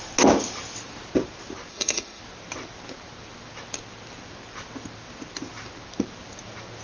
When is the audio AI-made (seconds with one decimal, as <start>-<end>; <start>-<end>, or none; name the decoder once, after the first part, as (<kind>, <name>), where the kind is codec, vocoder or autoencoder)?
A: 1.7-2.2 (autoencoder, DAC-VAE)